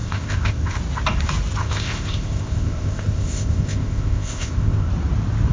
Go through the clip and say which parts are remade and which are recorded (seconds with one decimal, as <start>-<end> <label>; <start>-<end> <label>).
0.0-0.8 remade; 0.8-1.6 recorded; 1.6-4.9 remade; 4.9-5.5 recorded